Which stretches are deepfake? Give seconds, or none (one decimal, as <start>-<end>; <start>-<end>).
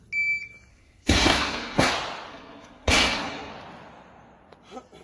0.7-1.9; 2.3-3.5